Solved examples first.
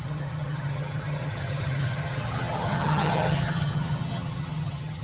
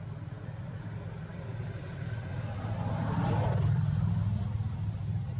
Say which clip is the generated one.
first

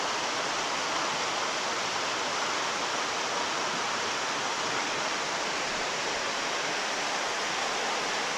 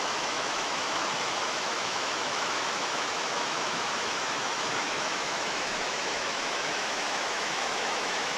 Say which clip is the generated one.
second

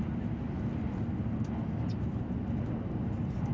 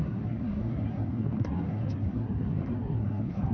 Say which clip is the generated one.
second